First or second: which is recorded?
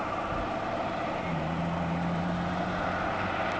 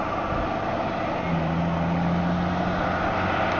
second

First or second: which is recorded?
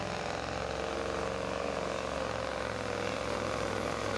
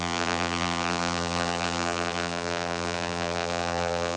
first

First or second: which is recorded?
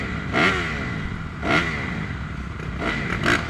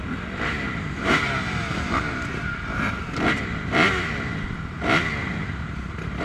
first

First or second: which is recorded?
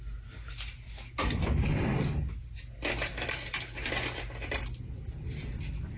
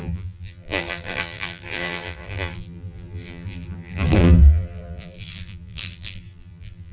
first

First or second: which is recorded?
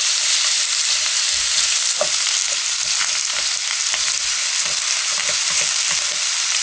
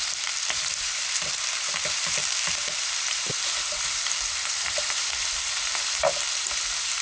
first